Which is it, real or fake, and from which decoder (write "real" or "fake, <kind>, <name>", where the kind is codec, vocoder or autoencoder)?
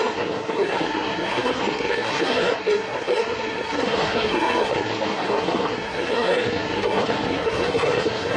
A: fake, codec, SNAC